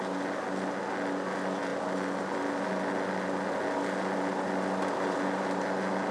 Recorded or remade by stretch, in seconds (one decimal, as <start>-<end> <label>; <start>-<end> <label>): 0.0-6.1 recorded